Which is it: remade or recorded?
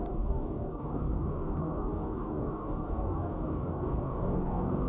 remade